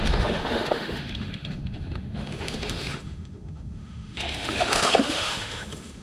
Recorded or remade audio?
remade